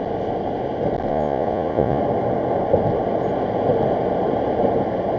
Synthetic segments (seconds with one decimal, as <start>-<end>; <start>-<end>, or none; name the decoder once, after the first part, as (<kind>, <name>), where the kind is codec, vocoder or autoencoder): 1.1-2.0 (vocoder, Vocos)